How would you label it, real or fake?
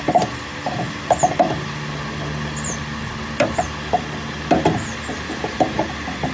real